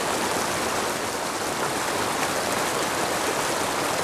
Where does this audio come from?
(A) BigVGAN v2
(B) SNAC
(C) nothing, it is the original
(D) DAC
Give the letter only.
C